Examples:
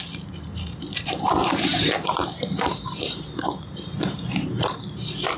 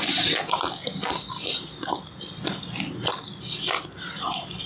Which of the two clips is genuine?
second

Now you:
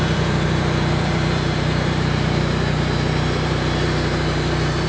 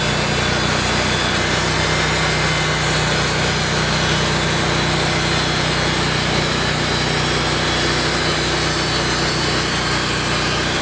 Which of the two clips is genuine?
second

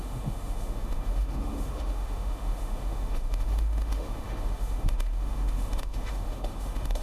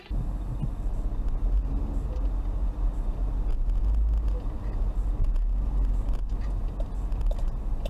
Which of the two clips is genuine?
second